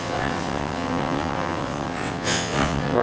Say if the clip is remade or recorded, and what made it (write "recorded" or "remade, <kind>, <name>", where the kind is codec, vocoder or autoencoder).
remade, vocoder, WaveNeXt